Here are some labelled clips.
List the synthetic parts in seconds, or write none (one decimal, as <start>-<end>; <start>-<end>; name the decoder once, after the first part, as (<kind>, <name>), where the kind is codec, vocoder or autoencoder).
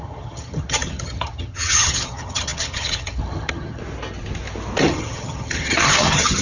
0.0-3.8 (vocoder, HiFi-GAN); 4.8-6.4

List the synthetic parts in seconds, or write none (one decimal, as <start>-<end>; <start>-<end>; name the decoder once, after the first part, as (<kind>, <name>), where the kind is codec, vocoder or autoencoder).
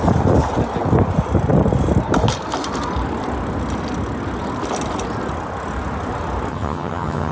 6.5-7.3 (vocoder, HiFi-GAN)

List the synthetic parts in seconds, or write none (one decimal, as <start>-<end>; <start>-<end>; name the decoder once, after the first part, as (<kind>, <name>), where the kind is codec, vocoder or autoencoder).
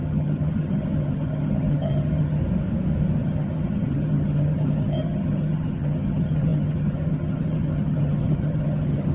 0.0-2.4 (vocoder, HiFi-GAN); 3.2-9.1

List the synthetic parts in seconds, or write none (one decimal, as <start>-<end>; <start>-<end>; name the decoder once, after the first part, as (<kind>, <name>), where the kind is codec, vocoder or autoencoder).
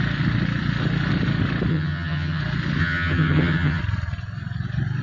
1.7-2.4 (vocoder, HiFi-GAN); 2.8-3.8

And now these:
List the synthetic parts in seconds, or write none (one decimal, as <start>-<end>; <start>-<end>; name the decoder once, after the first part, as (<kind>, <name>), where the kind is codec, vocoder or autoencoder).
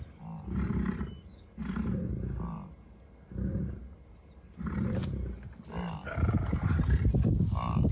none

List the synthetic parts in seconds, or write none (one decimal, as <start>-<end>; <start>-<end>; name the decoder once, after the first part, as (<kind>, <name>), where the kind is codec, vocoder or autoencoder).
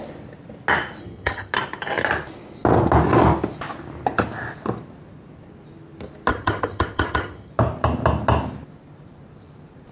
1.0-1.5 (vocoder, HiFi-GAN); 6.3-7.5